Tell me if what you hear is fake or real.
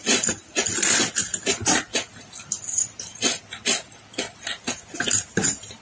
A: real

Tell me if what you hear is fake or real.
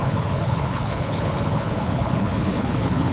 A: fake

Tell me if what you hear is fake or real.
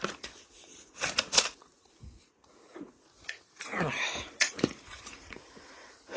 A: fake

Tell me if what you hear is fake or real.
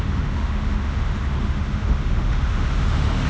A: fake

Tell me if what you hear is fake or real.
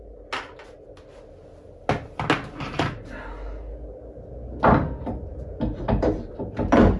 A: real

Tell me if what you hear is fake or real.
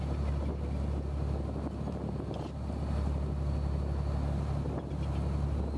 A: real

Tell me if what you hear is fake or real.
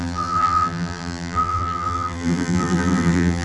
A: fake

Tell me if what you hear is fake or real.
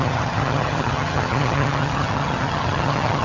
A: fake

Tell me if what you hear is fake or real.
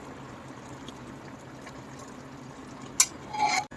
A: real